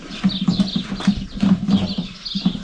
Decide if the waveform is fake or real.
real